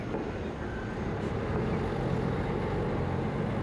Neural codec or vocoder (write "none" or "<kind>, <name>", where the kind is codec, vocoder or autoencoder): none